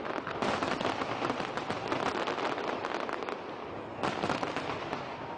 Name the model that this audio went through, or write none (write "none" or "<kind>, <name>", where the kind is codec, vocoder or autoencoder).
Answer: none